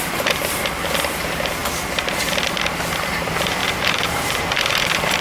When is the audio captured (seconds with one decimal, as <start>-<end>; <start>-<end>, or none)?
0.4-1.1; 1.6-3.2